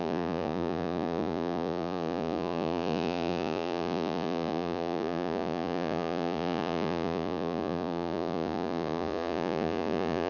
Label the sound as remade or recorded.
remade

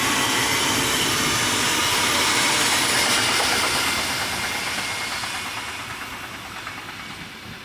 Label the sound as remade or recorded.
recorded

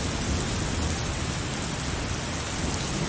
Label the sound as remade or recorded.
recorded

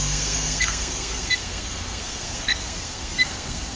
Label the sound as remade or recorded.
remade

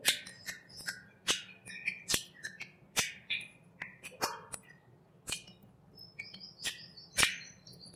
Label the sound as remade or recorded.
recorded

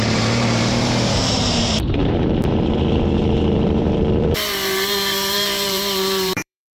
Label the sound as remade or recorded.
remade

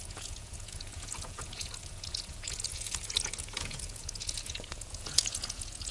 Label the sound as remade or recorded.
remade